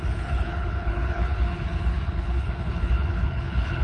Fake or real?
fake